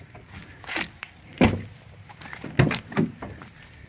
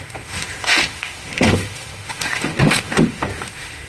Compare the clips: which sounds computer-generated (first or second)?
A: second